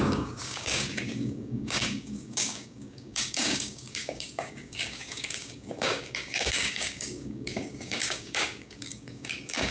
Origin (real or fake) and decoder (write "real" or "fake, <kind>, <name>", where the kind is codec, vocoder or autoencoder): fake, codec, DAC